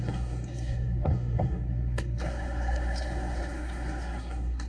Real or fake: fake